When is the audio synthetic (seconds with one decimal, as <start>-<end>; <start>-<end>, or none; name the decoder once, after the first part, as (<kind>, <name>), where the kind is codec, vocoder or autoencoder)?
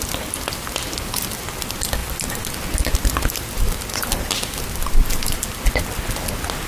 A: none